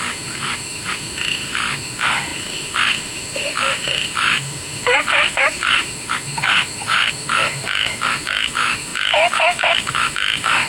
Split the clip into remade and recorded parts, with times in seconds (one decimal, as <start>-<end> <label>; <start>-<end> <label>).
0.0-10.7 remade